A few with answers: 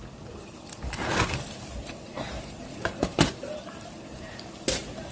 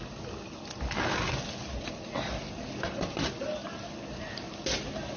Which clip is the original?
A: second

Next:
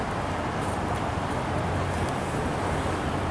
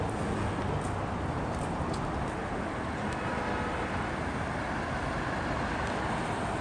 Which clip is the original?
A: second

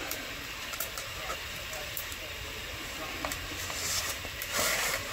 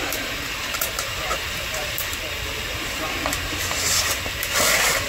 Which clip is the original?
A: second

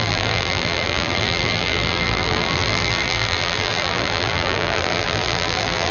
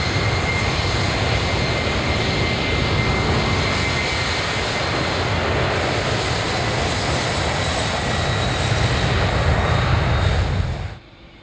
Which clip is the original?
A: second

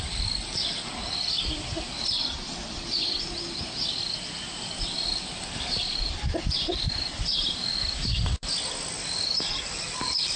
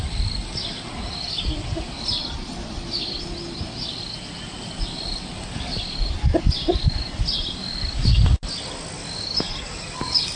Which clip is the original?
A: second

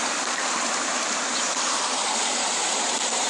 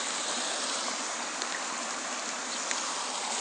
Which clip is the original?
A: second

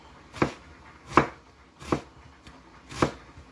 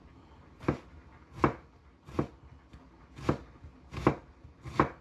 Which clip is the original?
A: first